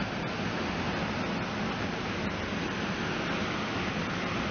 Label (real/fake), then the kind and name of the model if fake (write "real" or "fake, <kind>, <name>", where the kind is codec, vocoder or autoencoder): real